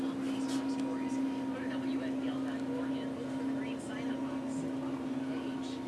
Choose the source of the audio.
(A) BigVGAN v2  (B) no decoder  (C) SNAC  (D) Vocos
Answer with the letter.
B